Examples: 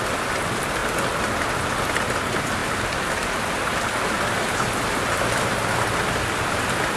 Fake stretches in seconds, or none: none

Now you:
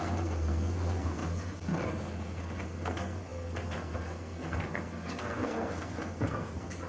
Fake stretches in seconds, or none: 0.0-6.9 (codec, SNAC)

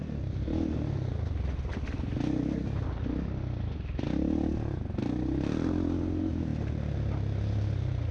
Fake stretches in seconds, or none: none

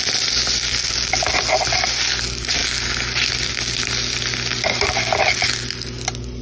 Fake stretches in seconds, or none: none

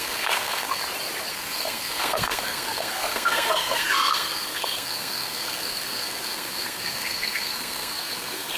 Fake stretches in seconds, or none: 0.0-0.8 (codec, SNAC); 1.3-8.6

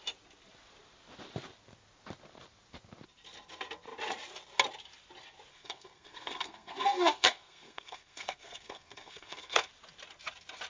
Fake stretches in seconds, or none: 5.5-9.7 (codec, SNAC)